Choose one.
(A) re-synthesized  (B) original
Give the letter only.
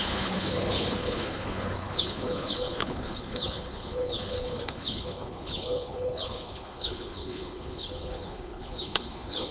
A